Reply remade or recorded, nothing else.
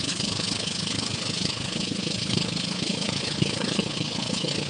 remade